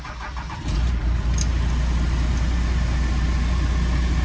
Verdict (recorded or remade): recorded